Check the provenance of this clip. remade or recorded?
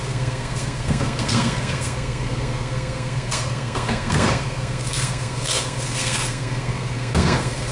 remade